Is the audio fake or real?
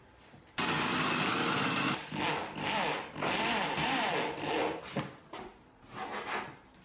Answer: real